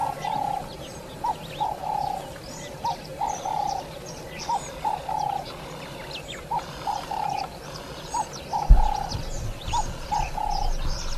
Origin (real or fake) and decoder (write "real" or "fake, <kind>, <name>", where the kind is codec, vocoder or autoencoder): real